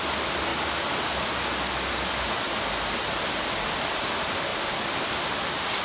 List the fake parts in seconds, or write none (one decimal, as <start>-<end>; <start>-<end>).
0.0-0.5; 4.0-5.8